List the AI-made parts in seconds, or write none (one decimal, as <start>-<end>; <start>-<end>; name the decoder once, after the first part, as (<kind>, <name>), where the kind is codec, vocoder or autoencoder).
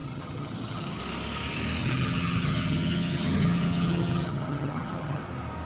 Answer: 0.0-1.0 (vocoder, HiFi-GAN); 1.8-5.2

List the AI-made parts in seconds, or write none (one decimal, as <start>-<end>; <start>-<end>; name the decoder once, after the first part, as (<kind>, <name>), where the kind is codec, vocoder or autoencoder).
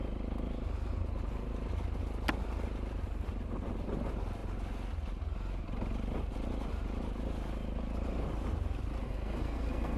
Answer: 9.0-10.0 (codec, SNAC)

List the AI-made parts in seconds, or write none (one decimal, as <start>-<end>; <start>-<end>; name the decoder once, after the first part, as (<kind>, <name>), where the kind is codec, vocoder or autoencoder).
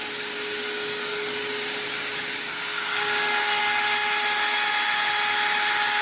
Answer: 0.0-3.6 (codec, DAC)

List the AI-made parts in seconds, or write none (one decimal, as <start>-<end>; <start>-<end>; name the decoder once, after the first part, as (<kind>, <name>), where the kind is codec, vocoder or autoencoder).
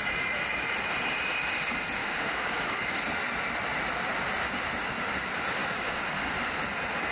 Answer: 2.0-3.0 (codec, DAC); 5.6-6.3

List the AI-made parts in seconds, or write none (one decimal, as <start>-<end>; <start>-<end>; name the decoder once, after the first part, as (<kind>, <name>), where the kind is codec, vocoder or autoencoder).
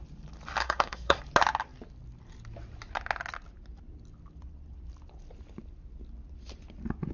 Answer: 0.6-1.2 (codec, SNAC)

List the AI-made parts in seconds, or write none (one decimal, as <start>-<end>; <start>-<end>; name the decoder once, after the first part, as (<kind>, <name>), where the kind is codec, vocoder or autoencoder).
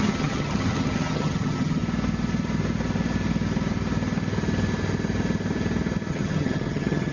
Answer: 0.0-1.8 (vocoder, HiFi-GAN); 6.1-7.1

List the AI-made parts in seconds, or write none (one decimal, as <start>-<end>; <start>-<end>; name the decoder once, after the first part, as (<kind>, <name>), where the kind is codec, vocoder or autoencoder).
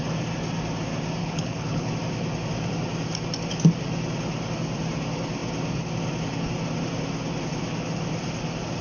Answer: 1.2-1.9 (codec, HILCodec)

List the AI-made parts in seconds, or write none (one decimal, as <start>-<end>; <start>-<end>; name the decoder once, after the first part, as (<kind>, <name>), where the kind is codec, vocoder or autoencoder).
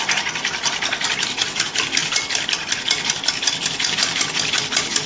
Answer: none